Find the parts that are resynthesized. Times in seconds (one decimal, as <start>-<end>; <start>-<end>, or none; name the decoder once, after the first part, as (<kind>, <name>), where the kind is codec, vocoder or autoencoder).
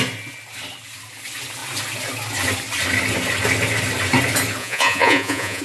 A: 4.6-5.6 (vocoder, Vocos)